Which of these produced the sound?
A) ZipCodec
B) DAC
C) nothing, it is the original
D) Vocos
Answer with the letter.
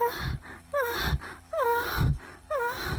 B